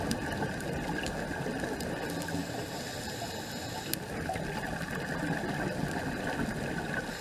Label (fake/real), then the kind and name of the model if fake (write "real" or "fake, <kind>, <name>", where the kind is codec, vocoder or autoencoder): real